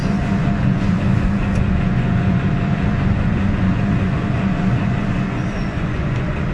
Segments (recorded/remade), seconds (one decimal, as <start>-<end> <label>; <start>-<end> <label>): 0.0-6.5 remade